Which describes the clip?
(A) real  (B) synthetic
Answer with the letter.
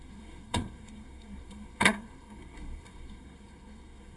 B